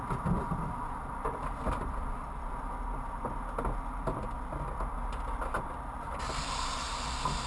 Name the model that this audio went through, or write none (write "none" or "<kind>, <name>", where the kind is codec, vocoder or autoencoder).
none